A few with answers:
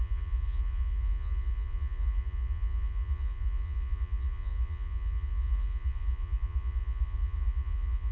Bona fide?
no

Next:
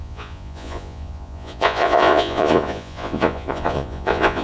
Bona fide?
no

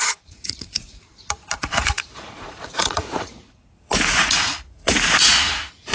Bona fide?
no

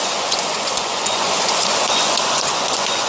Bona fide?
no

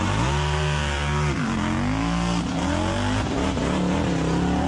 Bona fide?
yes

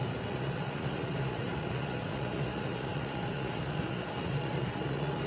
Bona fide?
no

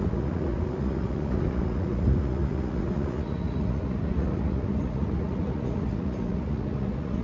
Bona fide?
no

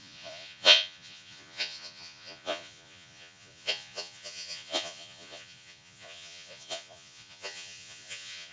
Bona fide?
no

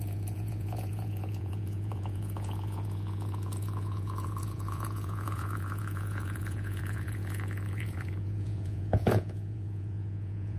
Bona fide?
no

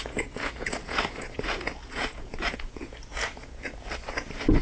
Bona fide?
no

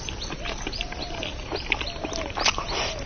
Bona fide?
yes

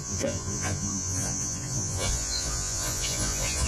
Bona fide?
no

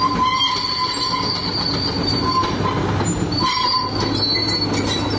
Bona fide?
yes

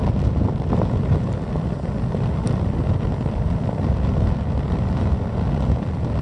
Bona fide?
yes